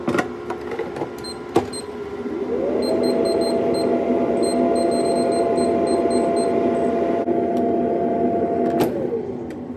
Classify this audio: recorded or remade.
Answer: recorded